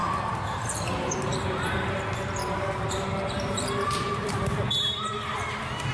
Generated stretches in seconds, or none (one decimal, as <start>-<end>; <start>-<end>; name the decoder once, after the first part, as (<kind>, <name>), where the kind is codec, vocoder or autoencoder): 0.0-2.0 (vocoder, BigVGAN v2); 2.4-5.9